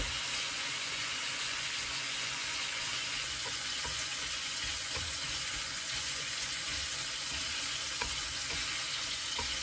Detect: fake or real fake